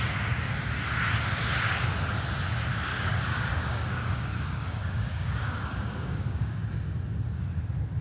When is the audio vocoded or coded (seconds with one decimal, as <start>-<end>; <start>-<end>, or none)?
2.9-6.6